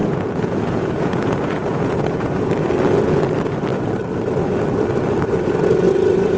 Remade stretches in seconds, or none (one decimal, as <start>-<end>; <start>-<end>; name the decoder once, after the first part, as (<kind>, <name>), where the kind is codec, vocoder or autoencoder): 0.0-2.5 (vocoder, Vocos)